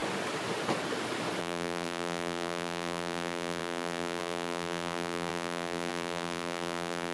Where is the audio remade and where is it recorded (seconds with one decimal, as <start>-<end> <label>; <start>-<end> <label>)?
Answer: 0.0-1.4 recorded; 1.4-7.1 remade